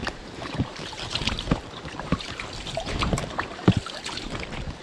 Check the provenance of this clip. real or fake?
fake